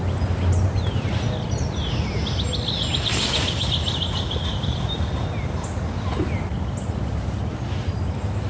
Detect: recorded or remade recorded